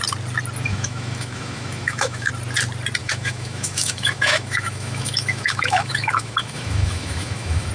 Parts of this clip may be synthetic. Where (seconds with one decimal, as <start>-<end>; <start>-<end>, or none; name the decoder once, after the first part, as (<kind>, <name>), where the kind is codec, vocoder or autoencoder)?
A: 0.7-2.3 (autoencoder, DAC-VAE); 3.0-7.7